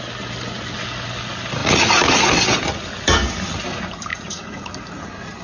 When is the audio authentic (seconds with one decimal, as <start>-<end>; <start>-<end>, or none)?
0.0-1.6; 2.3-4.1; 4.7-5.4